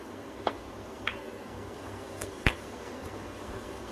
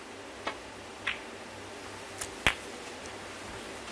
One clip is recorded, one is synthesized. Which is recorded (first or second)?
second